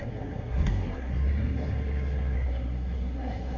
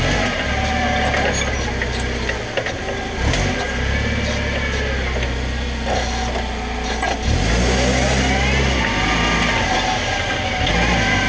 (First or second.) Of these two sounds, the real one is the second